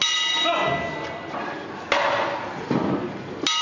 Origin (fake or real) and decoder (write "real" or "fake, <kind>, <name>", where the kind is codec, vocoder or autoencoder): real